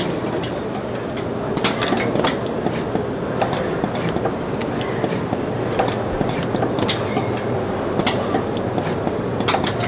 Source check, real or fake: real